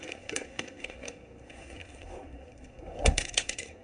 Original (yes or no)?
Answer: no